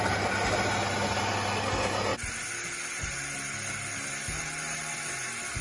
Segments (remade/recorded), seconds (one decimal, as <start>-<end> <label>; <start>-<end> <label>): 0.0-5.6 recorded